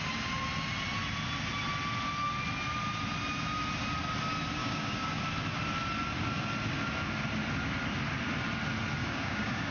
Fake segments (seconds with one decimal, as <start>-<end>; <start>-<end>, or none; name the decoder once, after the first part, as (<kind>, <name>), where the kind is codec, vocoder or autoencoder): 4.6-5.2 (codec, DAC); 9.0-9.7